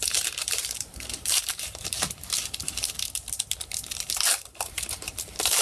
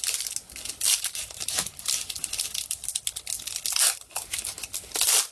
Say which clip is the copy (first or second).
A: first